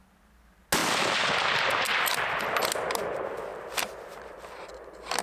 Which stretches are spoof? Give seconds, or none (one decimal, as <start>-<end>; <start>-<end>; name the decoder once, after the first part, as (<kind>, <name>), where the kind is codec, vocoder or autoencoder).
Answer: 0.8-2.4 (vocoder, BigVGAN v2)